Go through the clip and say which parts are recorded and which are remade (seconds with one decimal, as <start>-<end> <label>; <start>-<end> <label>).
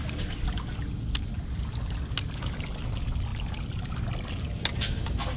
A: 0.0-5.4 recorded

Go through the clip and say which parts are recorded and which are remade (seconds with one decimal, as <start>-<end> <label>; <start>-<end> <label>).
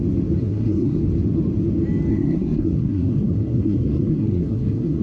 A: 0.0-0.4 recorded; 0.4-1.0 remade; 1.0-2.1 recorded; 2.1-5.0 remade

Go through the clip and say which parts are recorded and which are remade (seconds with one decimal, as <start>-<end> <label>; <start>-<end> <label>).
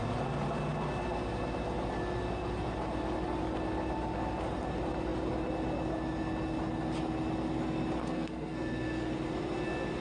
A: 0.0-8.0 recorded; 8.0-9.1 remade; 9.1-10.0 recorded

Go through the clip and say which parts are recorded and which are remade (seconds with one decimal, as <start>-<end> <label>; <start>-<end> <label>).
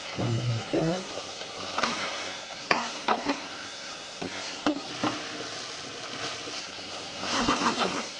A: 0.0-4.9 remade; 4.9-6.6 recorded; 6.6-8.2 remade